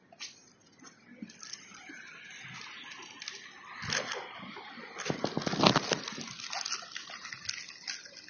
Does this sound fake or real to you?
real